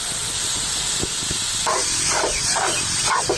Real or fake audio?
real